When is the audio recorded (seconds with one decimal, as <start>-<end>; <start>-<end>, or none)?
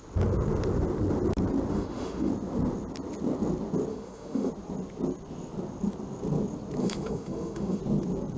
0.0-1.7; 2.3-3.9; 4.5-6.8; 7.8-8.4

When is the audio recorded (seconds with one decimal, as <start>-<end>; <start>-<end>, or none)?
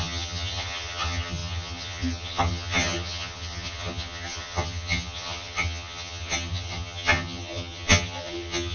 none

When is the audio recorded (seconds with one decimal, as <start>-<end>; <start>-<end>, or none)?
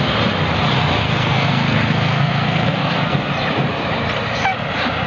0.0-1.0; 3.3-5.1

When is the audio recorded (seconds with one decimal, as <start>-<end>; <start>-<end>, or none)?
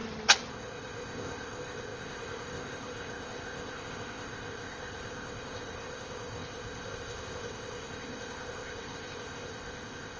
0.0-0.5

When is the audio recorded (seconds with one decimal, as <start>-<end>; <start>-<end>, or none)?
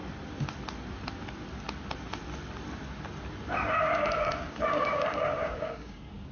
0.0-3.8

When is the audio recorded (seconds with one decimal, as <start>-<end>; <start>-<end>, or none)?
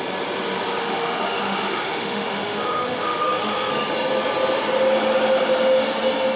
0.0-0.8; 3.7-6.4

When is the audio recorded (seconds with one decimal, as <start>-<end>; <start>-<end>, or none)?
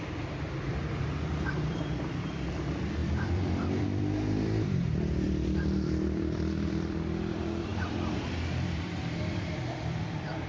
none